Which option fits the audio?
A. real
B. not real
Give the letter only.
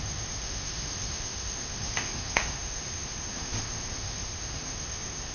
B